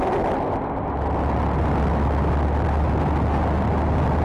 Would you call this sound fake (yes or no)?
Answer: no